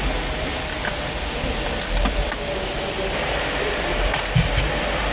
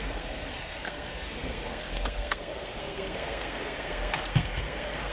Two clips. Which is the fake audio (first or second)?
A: second